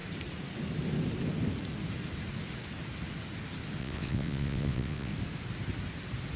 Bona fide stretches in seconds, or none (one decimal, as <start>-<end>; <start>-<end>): 0.0-3.8; 5.1-6.4